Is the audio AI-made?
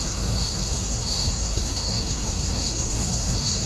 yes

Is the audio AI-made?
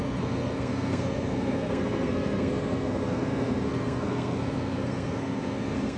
yes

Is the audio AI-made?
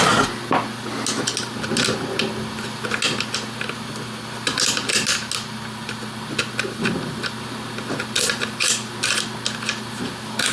no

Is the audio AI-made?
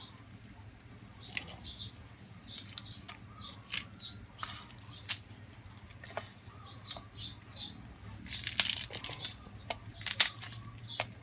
no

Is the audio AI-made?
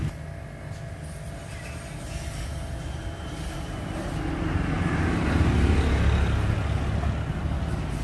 no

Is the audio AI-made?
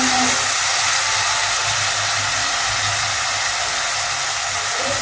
no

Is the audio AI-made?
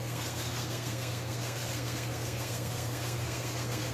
yes